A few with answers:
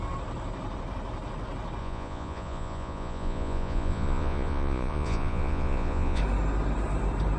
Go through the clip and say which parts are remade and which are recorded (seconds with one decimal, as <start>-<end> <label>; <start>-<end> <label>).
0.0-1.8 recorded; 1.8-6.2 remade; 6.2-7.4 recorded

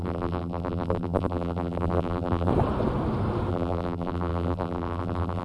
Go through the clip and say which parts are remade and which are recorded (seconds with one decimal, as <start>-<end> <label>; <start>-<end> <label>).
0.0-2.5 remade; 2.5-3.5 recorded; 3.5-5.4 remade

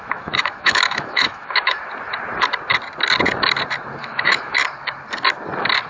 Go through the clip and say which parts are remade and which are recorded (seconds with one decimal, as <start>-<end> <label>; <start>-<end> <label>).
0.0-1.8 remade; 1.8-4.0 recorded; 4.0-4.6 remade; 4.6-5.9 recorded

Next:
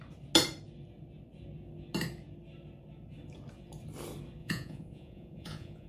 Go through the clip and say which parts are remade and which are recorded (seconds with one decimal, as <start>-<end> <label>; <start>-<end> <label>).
0.0-4.4 recorded; 4.4-5.9 remade

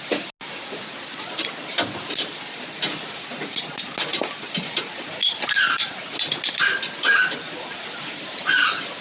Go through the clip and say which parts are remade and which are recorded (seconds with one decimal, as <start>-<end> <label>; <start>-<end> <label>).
0.0-9.0 recorded